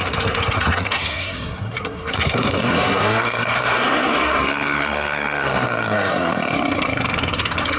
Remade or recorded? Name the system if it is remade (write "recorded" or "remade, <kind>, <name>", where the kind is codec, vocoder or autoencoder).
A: remade, codec, SNAC